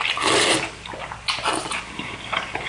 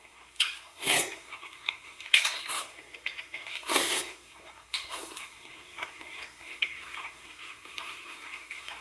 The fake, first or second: second